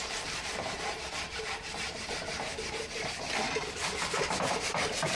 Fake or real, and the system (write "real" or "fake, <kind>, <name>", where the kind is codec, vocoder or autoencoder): fake, vocoder, BigVGAN v2